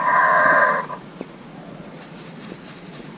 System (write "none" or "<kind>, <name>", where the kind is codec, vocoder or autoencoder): vocoder, Vocos